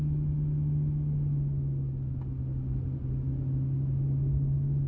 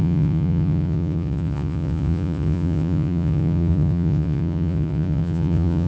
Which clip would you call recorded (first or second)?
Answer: first